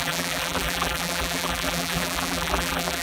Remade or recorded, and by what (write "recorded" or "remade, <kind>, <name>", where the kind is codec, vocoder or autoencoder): remade, vocoder, BigVGAN v2